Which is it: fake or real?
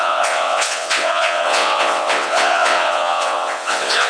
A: fake